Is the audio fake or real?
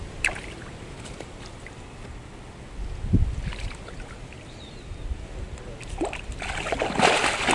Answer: real